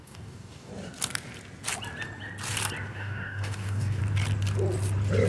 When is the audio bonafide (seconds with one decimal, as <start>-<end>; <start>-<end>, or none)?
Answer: 0.7-2.9; 4.0-5.3

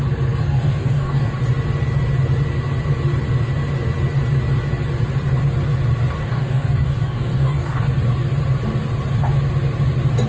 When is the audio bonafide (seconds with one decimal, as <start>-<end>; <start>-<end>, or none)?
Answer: 0.0-0.4; 1.3-6.2; 7.9-10.3

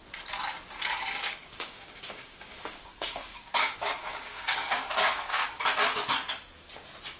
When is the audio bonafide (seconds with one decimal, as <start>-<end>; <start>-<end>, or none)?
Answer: 0.0-1.2; 5.5-7.2

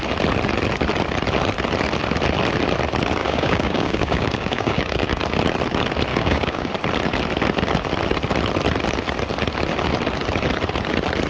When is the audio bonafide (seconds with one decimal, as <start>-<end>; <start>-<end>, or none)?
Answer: 0.0-3.2; 5.2-6.1; 6.7-11.3

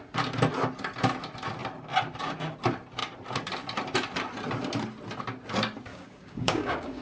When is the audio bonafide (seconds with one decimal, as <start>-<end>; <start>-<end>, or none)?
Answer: 0.0-5.9

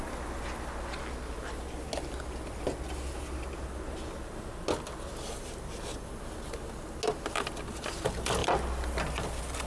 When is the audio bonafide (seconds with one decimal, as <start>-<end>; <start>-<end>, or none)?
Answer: 0.0-9.7